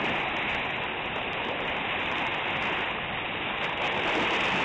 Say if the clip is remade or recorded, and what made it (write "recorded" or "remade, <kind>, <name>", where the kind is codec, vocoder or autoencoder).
recorded